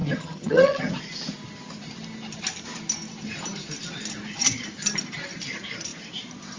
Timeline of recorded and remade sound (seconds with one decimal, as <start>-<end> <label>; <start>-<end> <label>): 0.0-0.9 remade; 0.9-6.6 recorded